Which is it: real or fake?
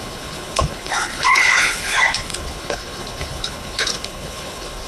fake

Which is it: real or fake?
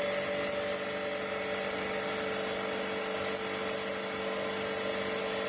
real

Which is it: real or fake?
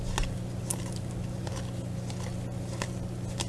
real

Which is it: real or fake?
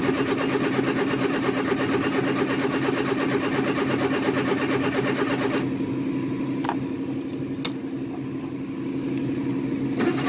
real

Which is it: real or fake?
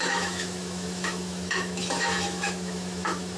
fake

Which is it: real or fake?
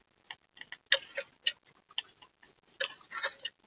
real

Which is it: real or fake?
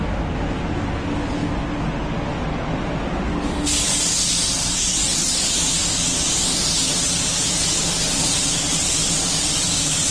real